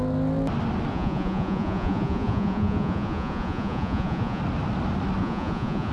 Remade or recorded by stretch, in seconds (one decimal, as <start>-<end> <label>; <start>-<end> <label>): 0.0-0.9 recorded; 0.9-4.4 remade; 4.4-5.2 recorded; 5.2-5.9 remade